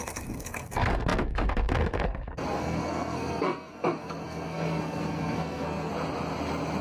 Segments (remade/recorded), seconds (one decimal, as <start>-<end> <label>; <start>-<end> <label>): 0.0-5.9 remade; 5.9-6.8 recorded